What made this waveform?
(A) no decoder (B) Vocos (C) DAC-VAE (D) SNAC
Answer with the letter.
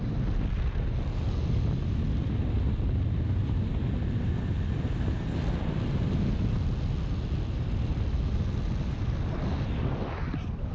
A